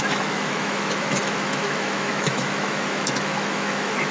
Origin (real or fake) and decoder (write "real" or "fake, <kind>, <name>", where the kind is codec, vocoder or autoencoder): fake, autoencoder, DAC-VAE